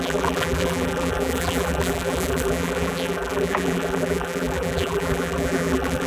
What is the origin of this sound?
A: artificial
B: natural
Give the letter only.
A